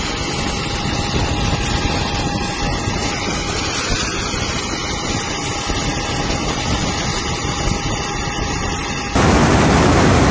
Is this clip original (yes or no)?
yes